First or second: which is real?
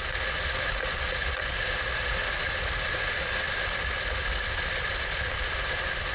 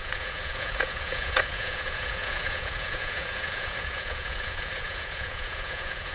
first